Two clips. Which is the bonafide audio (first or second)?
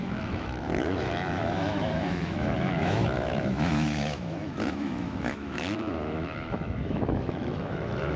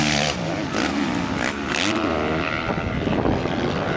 second